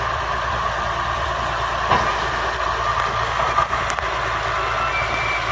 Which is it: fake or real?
real